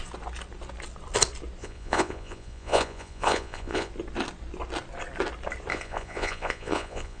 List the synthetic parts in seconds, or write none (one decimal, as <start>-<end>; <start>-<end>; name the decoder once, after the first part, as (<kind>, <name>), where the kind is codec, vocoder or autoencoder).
1.6-3.9 (vocoder, Vocos); 5.7-7.2